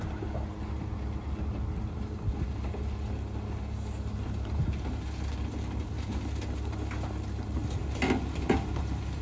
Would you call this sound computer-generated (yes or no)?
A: no